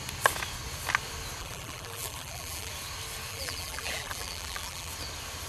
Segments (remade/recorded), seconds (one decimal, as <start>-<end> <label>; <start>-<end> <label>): 0.0-1.4 recorded; 1.4-2.7 remade; 2.7-3.3 recorded; 3.3-4.9 remade; 4.9-5.5 recorded